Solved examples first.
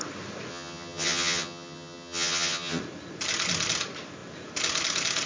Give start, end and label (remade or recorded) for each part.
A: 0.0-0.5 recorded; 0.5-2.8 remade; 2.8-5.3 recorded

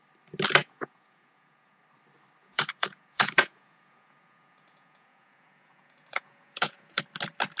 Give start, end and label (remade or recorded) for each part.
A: 0.0-0.6 recorded; 0.6-1.8 remade; 1.8-2.4 recorded; 2.4-7.0 remade; 7.0-7.6 recorded

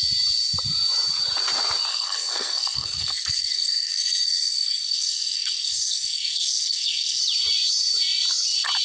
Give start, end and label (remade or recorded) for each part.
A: 0.0-1.9 recorded; 1.9-7.2 remade; 7.2-8.8 recorded

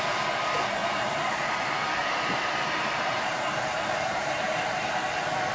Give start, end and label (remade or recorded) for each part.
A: 0.0-0.8 recorded; 0.8-1.4 remade; 1.4-2.0 recorded; 2.0-4.9 remade; 4.9-5.5 recorded

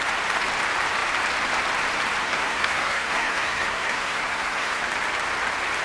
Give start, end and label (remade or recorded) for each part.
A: 0.0-2.2 recorded; 2.2-4.8 remade; 4.8-5.8 recorded